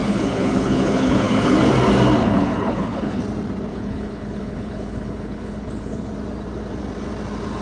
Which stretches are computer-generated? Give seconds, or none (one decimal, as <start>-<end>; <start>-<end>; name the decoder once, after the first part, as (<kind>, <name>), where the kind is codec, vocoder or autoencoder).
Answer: 0.0-1.7 (codec, HILCodec); 2.2-3.2; 3.7-6.1